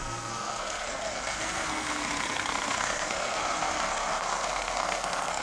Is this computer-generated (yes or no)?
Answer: yes